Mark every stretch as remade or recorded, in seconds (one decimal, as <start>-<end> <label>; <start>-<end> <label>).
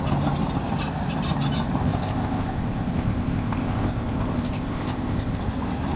0.0-1.8 recorded; 1.8-5.4 remade; 5.4-6.0 recorded